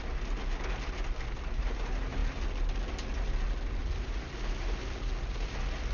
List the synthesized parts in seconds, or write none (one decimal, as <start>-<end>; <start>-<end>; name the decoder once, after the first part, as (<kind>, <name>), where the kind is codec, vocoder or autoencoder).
none